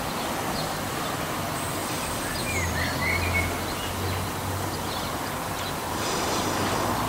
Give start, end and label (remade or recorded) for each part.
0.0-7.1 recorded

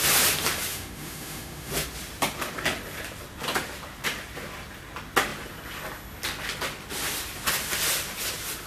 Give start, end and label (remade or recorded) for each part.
0.0-0.7 recorded; 0.7-1.7 remade; 1.7-8.7 recorded

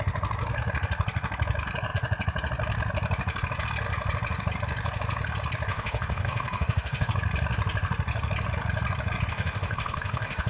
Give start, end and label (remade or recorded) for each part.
0.0-5.7 recorded; 5.7-7.1 remade; 7.1-9.3 recorded; 9.3-10.5 remade

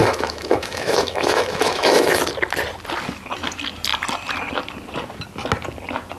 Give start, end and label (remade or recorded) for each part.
0.0-2.2 remade; 2.2-6.2 recorded

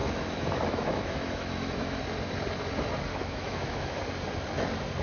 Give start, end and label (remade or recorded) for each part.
0.0-2.0 remade; 2.0-3.1 recorded; 3.1-4.0 remade; 4.0-5.0 recorded